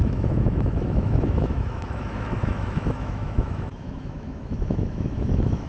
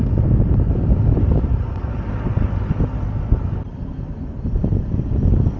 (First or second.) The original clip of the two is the second